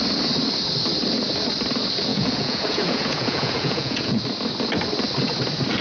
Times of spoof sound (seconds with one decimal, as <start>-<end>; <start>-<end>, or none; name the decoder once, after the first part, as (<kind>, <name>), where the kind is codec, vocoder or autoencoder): 2.1-4.2 (vocoder, Vocos)